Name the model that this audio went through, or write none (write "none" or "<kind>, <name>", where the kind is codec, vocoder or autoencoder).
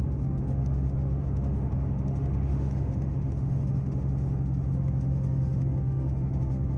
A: autoencoder, DAC-VAE